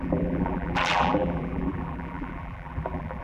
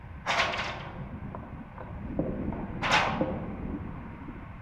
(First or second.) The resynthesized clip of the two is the first